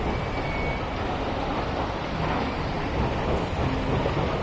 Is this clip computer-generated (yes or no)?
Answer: no